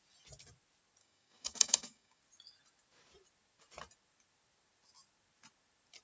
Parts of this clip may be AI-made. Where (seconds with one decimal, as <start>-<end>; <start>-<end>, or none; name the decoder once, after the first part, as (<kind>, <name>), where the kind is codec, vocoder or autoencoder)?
1.0-2.2 (codec, DAC)